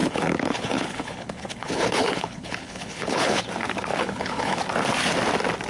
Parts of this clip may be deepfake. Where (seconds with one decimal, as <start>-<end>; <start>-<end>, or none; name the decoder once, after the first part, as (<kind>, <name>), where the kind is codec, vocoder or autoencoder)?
0.0-3.4 (codec, HILCodec); 3.9-4.6